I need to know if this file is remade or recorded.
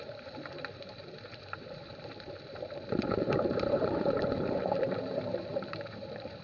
remade